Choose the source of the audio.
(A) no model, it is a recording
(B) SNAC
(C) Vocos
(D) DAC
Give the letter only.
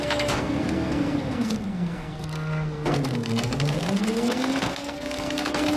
B